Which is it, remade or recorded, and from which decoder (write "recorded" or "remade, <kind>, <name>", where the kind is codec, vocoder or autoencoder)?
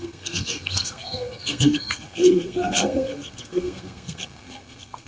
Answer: remade, codec, SNAC